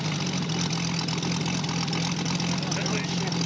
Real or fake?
real